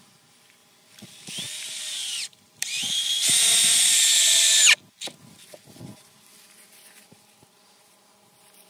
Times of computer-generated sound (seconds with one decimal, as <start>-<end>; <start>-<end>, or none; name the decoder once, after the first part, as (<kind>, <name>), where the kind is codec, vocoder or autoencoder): 0.0-0.6 (vocoder, BigVGAN v2); 1.4-2.8; 7.7-8.7